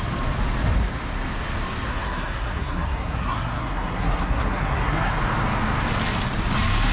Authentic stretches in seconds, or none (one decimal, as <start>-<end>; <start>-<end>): 0.0-1.9; 5.1-6.9